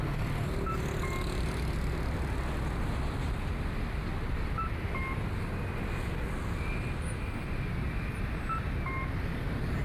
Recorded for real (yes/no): yes